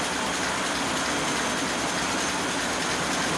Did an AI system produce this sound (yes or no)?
no